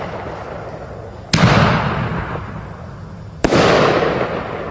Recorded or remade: recorded